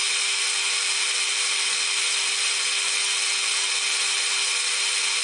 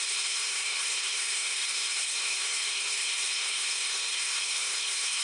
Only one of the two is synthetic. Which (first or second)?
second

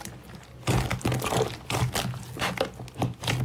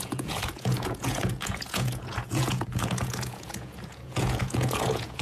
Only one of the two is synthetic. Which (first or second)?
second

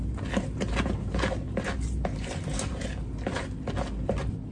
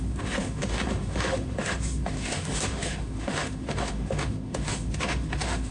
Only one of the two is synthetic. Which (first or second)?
second